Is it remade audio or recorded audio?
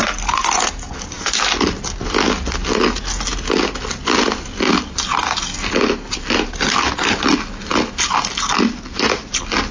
recorded